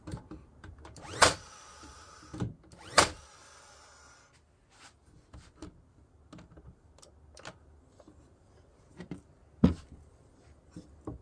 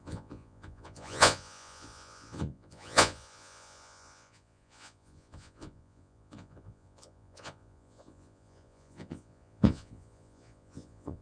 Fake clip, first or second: second